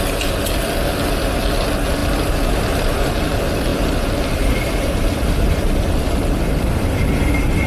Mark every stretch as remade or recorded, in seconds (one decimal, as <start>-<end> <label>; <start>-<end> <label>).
0.0-2.0 recorded; 2.0-3.1 remade; 3.1-3.7 recorded; 3.7-7.3 remade; 7.3-7.7 recorded